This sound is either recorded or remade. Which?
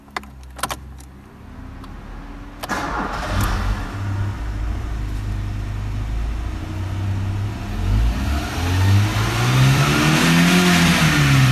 recorded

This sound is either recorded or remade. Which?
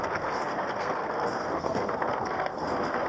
remade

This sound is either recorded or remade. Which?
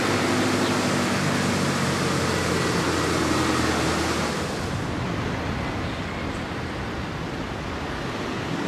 recorded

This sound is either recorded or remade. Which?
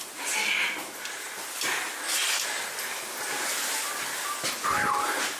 recorded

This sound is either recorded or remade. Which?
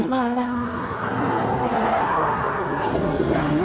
remade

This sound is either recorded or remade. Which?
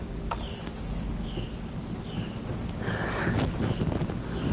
recorded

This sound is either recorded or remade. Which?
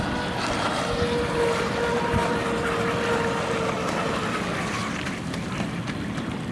recorded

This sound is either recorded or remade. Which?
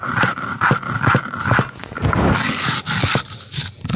recorded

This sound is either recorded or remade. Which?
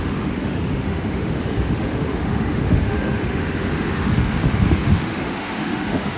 remade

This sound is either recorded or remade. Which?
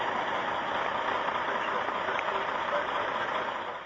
recorded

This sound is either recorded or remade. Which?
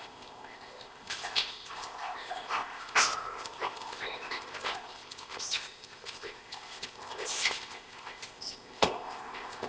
remade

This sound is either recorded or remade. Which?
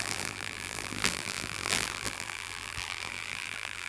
remade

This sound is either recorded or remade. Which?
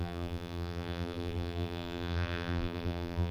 remade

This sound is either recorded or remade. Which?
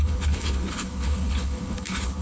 remade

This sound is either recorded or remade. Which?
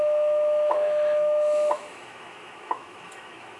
remade